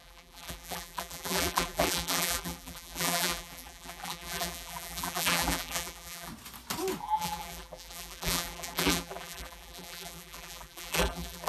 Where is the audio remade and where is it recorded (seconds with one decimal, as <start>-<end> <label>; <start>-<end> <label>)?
0.0-6.3 remade; 6.3-7.0 recorded; 7.0-11.5 remade